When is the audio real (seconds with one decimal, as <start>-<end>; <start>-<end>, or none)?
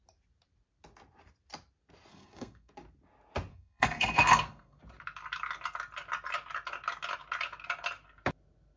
0.0-2.1; 2.7-3.5; 4.8-8.8